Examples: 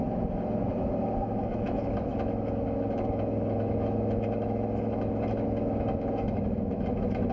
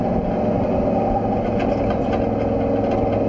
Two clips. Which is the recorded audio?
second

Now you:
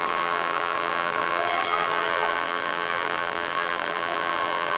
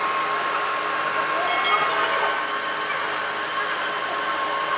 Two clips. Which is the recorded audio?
second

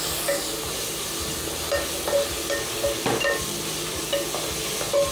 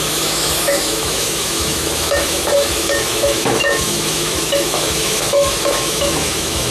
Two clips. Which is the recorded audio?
first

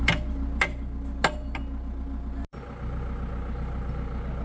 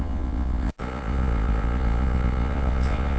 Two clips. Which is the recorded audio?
first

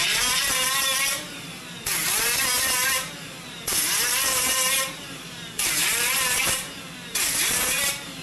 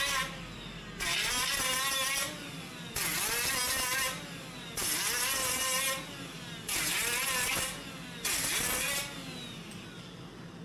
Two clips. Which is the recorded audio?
second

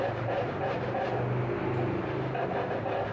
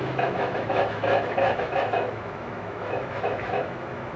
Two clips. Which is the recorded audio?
first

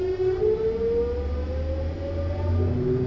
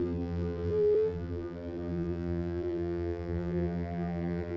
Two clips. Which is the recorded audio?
first